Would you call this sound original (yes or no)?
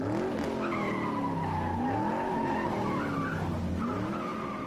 yes